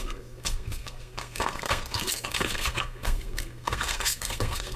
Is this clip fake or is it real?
fake